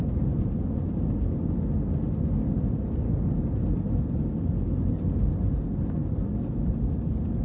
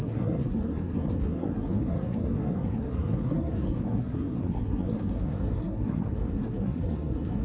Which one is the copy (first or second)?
second